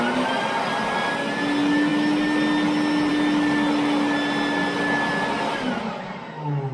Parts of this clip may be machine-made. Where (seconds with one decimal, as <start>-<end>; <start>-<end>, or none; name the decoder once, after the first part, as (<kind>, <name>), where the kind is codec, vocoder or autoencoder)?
none